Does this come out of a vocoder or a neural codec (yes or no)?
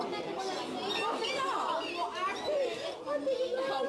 no